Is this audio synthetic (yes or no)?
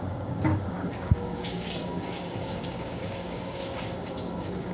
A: yes